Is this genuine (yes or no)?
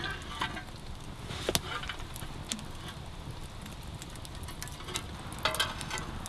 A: yes